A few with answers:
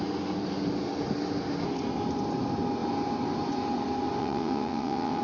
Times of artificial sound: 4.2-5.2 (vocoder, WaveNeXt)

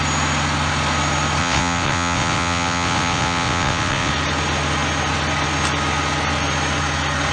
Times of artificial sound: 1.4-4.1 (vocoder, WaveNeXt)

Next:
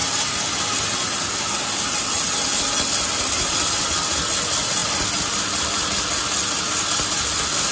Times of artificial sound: none